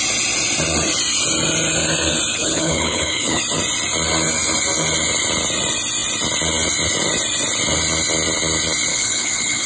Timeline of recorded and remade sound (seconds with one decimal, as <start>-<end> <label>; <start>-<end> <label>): 0.0-2.3 recorded; 2.3-3.4 remade; 3.4-8.9 recorded; 8.9-9.7 remade